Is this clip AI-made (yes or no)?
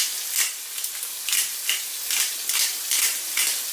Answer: no